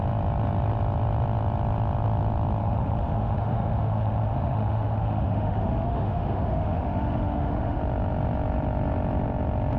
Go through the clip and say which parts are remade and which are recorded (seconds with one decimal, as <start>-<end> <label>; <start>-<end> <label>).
0.0-2.6 recorded; 2.6-7.8 remade; 7.8-9.8 recorded